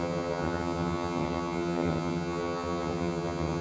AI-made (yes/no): yes